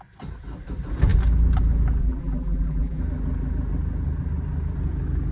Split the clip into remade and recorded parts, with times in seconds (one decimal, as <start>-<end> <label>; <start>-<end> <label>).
0.0-2.0 recorded; 2.0-3.0 remade; 3.0-5.3 recorded